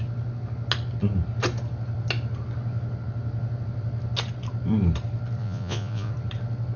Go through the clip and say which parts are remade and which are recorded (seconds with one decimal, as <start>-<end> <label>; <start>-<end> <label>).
0.0-5.4 recorded; 5.4-6.1 remade; 6.1-6.8 recorded